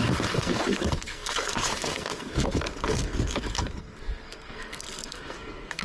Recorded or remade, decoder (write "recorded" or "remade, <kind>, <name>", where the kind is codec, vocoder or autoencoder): remade, codec, SNAC